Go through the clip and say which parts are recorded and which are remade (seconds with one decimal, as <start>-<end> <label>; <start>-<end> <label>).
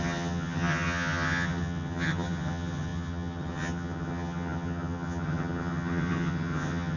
0.0-7.0 remade